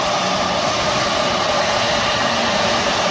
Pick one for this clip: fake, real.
real